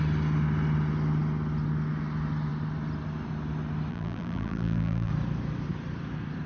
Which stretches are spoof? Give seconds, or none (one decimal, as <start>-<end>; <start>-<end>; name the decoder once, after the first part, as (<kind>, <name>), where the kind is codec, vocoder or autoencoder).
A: 3.9-5.1 (vocoder, BigVGAN v2)